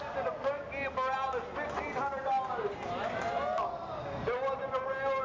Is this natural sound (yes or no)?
yes